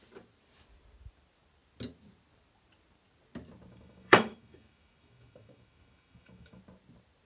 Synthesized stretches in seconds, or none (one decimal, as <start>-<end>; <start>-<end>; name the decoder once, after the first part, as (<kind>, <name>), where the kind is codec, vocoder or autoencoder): 3.7-6.6 (autoencoder, DAC-VAE)